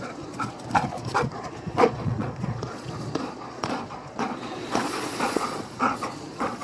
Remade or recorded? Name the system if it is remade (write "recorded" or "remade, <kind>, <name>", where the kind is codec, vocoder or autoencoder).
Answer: remade, vocoder, Vocos